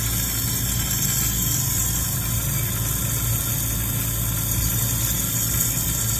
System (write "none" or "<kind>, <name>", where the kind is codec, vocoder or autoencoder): none